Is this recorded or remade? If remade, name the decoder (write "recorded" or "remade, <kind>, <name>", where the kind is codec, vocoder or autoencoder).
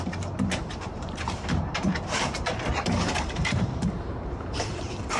remade, vocoder, BigVGAN v2